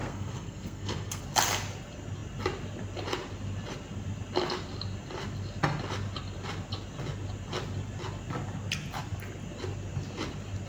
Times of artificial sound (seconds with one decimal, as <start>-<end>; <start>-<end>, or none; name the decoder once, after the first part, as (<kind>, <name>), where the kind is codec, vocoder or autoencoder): 0.0-1.2 (codec, SNAC)